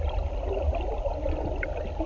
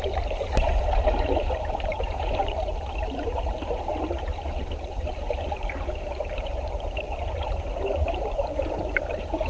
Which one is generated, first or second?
second